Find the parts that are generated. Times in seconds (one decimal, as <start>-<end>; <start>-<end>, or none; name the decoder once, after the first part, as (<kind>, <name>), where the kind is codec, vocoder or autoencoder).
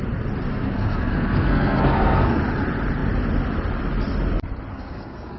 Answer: 0.5-2.4 (codec, SNAC); 4.7-5.4